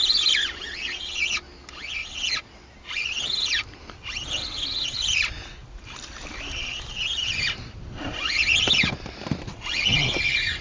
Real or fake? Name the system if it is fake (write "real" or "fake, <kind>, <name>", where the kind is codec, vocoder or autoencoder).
real